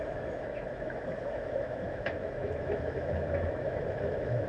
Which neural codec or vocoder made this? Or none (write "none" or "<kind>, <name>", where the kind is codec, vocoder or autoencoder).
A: autoencoder, DAC-VAE